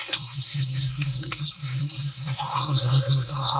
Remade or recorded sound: remade